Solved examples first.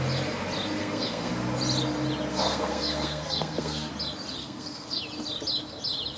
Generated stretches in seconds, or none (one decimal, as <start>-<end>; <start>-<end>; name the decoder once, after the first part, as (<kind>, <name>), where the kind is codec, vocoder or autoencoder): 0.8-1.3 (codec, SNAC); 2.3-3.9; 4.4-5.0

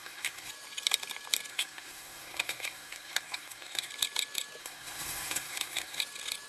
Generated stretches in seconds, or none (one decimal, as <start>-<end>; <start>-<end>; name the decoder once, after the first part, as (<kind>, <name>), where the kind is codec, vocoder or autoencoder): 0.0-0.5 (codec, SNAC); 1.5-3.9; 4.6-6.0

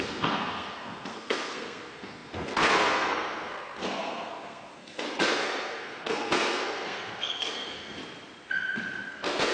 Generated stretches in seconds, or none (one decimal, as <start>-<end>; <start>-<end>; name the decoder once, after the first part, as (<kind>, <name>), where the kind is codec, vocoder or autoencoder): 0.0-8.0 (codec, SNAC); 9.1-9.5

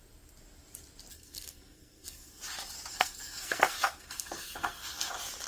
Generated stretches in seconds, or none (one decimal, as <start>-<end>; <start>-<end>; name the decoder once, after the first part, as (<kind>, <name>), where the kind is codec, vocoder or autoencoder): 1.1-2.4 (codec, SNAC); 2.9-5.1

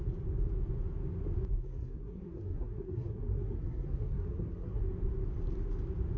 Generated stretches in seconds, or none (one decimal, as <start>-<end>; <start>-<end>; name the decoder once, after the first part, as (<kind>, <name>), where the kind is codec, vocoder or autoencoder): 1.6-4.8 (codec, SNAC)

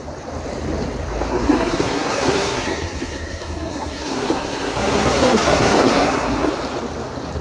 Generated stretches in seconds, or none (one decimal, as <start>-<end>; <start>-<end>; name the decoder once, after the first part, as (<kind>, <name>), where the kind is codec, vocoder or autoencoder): 1.3-6.5 (codec, SNAC)

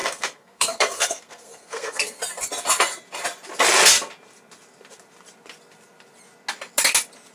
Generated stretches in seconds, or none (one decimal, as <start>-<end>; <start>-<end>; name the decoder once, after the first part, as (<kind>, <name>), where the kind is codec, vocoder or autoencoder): 0.0-2.2 (codec, SNAC)